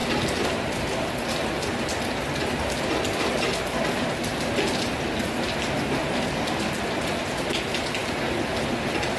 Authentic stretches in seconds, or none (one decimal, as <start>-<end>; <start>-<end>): 0.0-6.0; 6.6-9.2